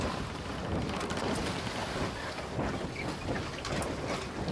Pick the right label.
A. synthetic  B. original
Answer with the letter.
B